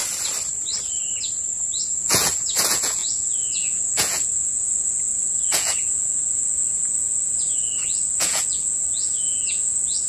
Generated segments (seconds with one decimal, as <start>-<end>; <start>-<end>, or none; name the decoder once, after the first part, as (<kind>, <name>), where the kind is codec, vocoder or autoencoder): 2.0-10.1 (vocoder, Vocos)